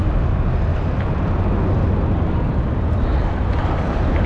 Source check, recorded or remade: recorded